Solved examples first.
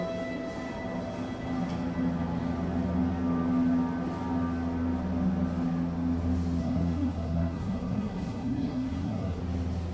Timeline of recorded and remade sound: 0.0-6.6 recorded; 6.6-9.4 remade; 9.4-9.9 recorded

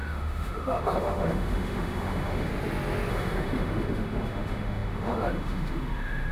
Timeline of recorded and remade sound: 0.0-2.5 remade; 2.5-3.1 recorded; 3.1-6.3 remade

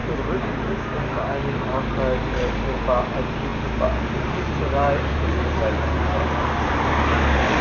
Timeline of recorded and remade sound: 0.0-7.6 recorded

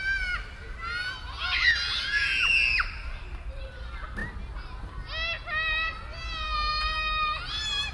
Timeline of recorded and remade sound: 0.0-7.9 recorded